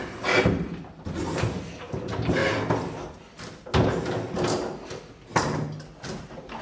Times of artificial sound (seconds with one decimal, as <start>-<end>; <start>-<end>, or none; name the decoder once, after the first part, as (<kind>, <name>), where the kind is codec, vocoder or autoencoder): none